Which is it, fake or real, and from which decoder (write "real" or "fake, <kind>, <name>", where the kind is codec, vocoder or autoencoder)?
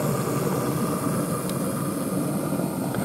real